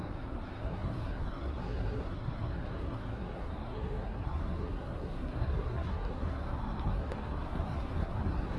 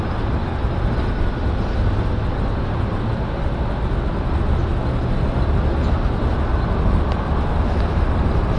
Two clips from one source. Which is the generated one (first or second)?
first